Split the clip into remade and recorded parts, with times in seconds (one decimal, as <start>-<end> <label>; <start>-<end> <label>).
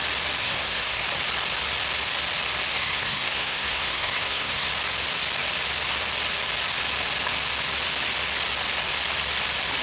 0.0-0.4 recorded; 0.4-1.0 remade; 1.0-2.7 recorded; 2.7-4.7 remade; 4.7-9.8 recorded